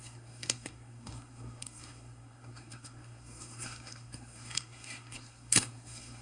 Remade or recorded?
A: remade